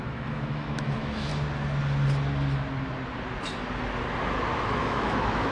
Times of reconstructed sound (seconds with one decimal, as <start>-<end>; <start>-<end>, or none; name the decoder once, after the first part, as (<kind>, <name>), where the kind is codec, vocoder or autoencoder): 0.0-1.3 (autoencoder, DAC-VAE); 4.6-5.5